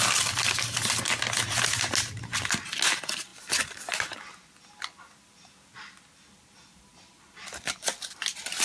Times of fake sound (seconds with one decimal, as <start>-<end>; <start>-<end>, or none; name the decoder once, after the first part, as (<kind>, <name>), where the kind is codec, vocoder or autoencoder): none